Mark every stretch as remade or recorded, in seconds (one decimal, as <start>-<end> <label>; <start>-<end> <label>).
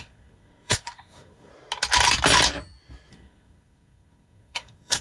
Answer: 0.0-1.5 remade; 1.5-3.1 recorded; 3.1-5.0 remade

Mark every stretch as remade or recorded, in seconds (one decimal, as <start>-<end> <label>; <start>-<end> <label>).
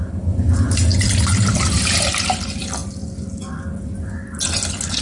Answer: 0.0-5.0 recorded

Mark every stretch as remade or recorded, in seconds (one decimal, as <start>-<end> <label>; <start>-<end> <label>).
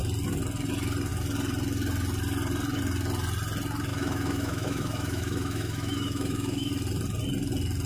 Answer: 0.0-3.9 recorded; 3.9-6.7 remade; 6.7-7.9 recorded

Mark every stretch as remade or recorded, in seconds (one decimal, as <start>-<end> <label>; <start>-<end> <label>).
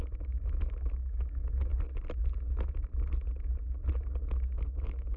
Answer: 0.0-1.7 remade; 1.7-4.6 recorded; 4.6-5.2 remade